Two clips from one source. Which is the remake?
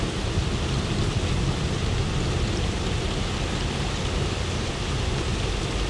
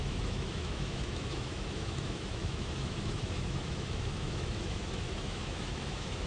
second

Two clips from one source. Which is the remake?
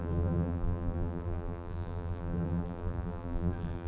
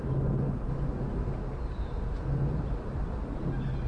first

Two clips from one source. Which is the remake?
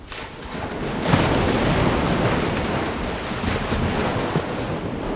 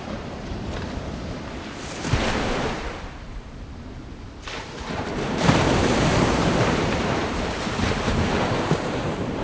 second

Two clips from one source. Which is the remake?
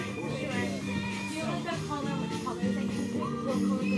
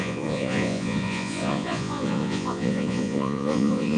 second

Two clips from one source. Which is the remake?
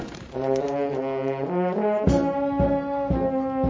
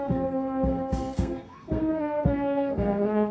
second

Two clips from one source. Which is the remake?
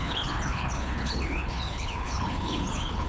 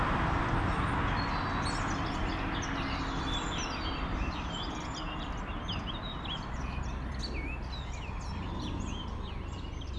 first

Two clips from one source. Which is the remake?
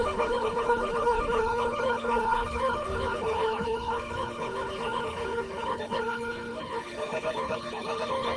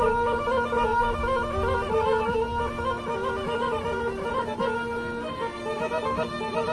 first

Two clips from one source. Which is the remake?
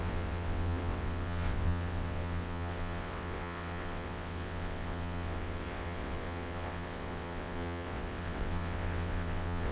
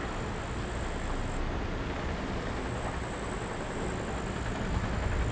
first